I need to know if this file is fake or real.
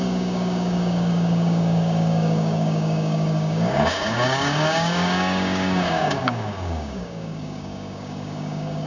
fake